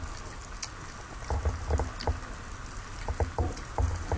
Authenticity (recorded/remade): recorded